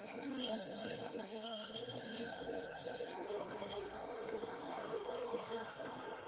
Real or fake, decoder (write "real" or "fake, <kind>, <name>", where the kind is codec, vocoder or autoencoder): fake, codec, SNAC